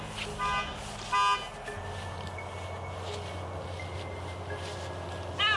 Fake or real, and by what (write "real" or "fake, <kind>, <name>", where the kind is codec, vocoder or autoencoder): real